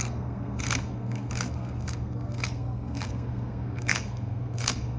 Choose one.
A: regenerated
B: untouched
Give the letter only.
A